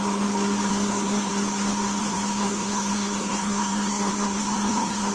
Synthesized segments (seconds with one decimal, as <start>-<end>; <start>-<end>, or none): 0.7-1.3; 2.0-5.1